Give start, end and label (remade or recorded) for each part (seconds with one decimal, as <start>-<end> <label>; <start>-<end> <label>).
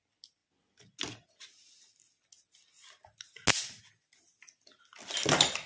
0.0-5.7 recorded